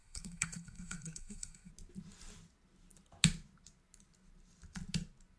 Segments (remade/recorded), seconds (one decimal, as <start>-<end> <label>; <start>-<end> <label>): 0.0-1.7 remade; 1.7-5.4 recorded